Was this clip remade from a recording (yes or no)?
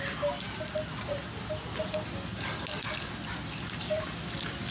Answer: no